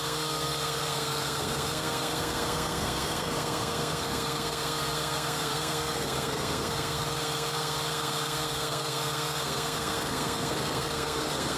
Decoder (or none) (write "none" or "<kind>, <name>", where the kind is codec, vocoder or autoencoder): codec, SNAC